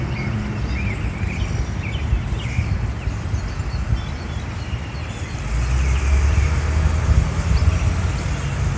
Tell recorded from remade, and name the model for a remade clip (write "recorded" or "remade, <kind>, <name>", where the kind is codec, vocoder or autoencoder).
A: recorded